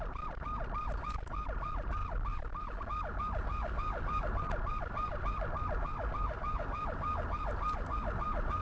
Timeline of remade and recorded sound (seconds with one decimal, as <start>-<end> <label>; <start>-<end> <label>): 0.0-2.0 recorded; 2.0-2.7 remade; 2.7-8.6 recorded